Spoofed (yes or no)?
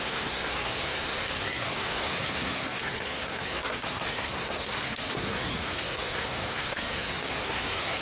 yes